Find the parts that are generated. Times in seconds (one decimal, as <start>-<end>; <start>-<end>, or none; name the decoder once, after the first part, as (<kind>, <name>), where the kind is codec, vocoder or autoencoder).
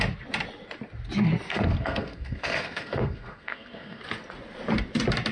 1.5-4.0 (codec, SNAC)